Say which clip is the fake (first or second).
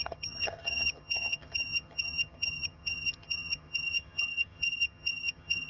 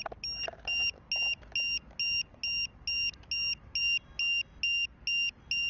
first